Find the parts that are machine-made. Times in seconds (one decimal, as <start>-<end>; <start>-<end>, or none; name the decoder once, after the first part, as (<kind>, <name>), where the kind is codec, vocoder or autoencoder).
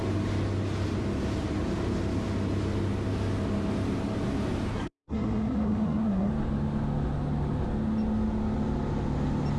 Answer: 4.7-6.3 (codec, SNAC)